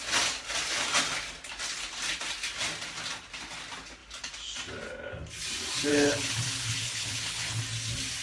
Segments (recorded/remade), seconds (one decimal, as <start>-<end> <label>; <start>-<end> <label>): 0.0-5.9 recorded; 5.9-7.6 remade; 7.6-8.2 recorded